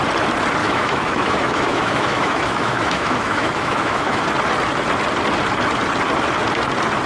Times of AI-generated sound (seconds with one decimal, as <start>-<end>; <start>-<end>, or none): 0.6-4.2